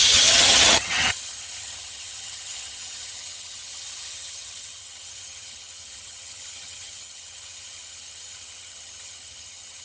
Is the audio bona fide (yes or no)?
no